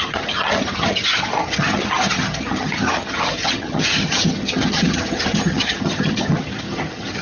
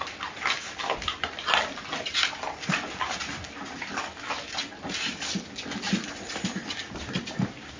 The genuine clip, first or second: second